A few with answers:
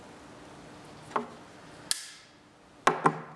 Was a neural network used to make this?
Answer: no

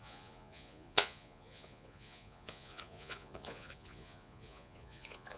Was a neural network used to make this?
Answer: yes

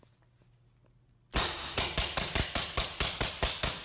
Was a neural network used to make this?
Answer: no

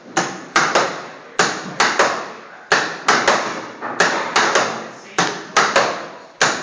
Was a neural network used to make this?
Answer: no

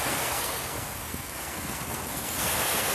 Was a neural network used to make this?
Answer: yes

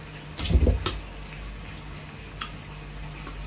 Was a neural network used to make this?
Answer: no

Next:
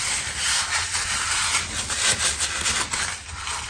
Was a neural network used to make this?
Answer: no